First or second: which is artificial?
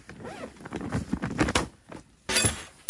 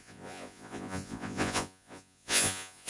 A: second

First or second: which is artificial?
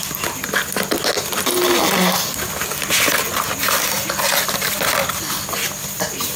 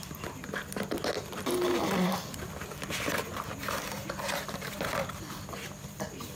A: second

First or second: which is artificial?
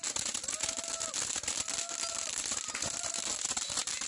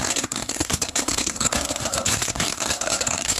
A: second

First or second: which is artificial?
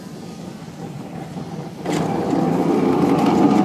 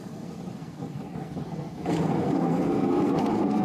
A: second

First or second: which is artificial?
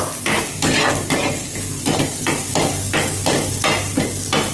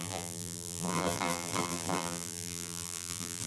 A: second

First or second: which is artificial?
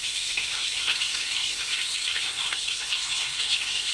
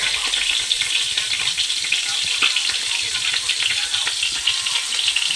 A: first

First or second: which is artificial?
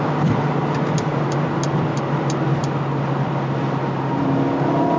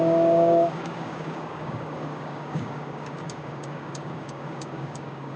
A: second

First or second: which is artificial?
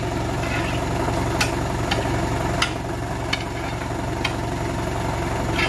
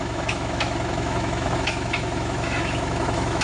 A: second